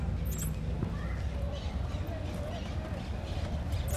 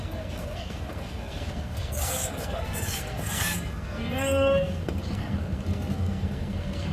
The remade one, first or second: second